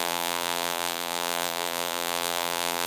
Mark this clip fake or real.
fake